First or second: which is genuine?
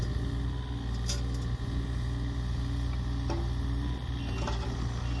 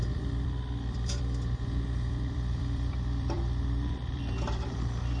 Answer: first